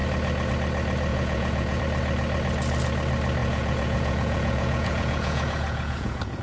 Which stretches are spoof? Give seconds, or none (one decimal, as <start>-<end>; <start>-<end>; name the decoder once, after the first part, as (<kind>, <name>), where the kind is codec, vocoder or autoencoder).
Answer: 1.1-1.8 (vocoder, Vocos); 3.4-6.4